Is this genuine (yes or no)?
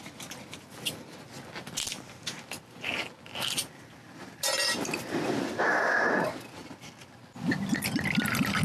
yes